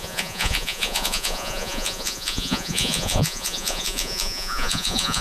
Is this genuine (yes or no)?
no